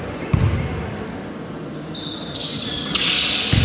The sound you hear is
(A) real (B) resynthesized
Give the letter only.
A